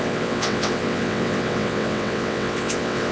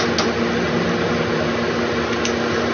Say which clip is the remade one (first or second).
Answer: first